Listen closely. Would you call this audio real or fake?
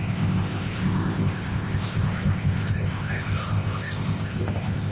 fake